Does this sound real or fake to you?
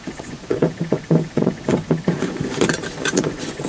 fake